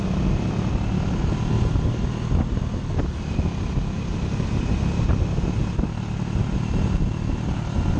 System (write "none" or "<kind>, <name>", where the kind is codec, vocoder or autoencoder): none